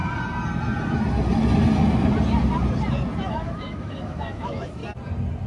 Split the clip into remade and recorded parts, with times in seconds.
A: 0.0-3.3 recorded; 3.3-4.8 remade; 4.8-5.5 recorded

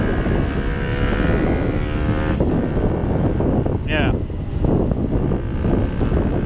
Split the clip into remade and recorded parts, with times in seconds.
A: 0.0-6.5 recorded

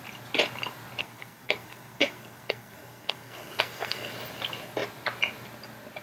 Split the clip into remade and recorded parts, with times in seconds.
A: 0.0-1.0 recorded; 1.0-4.1 remade; 4.1-6.0 recorded

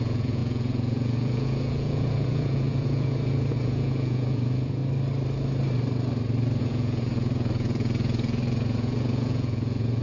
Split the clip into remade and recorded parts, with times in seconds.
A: 0.0-4.8 remade; 4.8-6.6 recorded; 6.6-10.0 remade

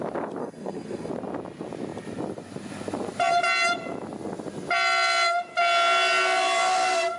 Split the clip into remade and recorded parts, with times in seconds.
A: 0.0-0.4 recorded; 0.4-1.1 remade; 1.1-7.2 recorded

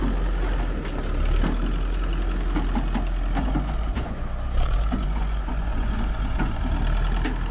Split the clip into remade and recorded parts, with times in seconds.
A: 0.0-3.4 recorded; 3.4-6.6 remade; 6.6-7.5 recorded